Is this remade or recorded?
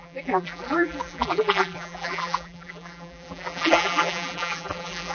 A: remade